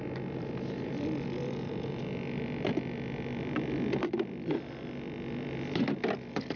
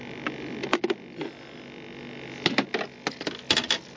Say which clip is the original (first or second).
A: second